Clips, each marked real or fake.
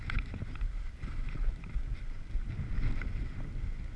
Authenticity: real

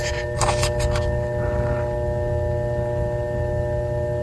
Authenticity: real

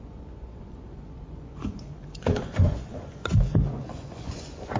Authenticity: fake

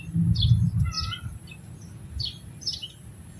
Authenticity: real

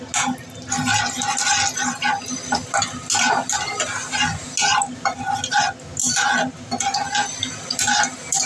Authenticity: real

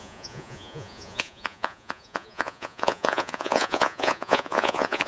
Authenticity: fake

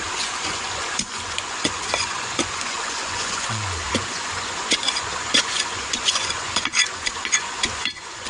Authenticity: fake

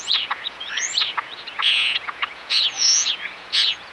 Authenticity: fake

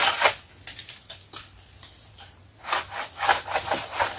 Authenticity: real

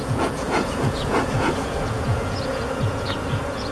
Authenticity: fake